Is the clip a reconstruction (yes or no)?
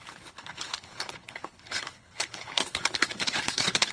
yes